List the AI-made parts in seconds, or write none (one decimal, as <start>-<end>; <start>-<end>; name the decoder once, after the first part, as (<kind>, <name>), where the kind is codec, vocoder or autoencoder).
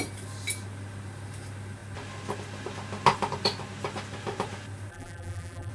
4.9-5.7 (vocoder, BigVGAN v2)